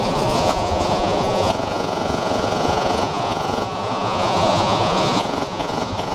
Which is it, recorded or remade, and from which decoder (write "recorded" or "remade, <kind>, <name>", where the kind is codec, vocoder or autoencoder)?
remade, vocoder, Vocos